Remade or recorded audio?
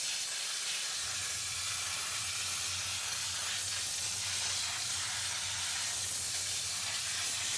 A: recorded